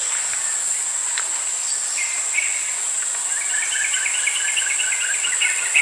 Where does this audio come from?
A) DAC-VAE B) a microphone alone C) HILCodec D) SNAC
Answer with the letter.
B